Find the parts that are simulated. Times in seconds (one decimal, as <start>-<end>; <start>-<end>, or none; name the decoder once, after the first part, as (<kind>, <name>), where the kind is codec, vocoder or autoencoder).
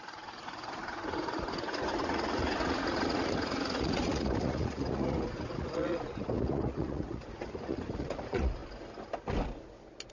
0.0-8.6 (vocoder, Vocos)